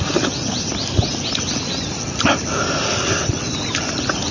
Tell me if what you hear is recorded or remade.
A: recorded